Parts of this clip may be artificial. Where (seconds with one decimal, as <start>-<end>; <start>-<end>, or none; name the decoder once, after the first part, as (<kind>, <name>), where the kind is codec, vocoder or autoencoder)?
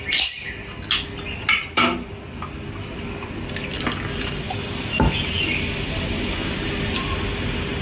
none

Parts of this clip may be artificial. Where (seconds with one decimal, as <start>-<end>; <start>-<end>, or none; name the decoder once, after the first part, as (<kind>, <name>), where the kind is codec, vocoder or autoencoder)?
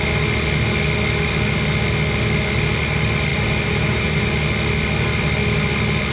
3.3-4.2 (vocoder, BigVGAN v2)